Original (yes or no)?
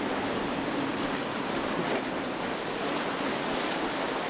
yes